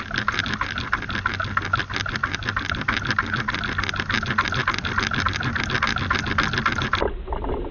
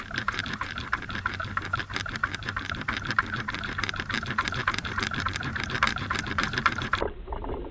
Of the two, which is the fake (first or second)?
second